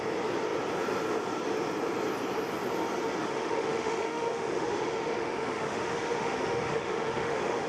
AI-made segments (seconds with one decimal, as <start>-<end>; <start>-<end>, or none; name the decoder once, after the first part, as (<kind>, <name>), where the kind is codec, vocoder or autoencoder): 3.2-7.7 (autoencoder, DAC-VAE)